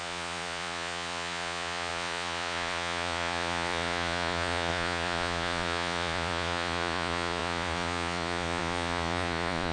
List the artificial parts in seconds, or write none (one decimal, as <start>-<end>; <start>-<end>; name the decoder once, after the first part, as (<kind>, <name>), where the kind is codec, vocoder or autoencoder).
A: 0.0-9.7 (vocoder, Vocos)